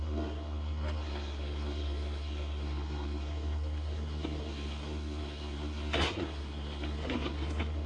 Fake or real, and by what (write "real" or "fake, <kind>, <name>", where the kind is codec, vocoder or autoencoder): fake, codec, SNAC